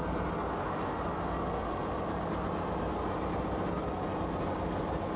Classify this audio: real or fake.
real